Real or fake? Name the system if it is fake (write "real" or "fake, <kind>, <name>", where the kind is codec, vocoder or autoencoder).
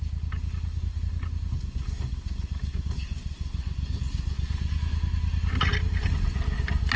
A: real